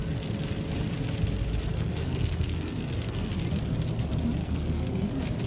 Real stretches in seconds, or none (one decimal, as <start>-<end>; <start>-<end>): 0.0-1.7; 3.3-4.4; 5.1-5.5